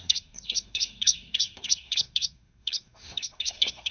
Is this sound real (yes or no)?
no